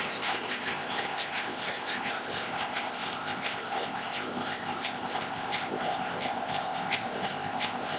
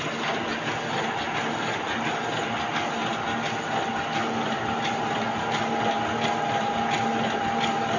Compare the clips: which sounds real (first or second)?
second